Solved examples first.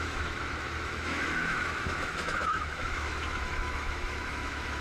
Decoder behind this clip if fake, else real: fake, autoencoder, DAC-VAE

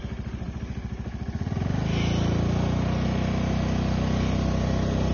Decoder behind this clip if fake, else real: real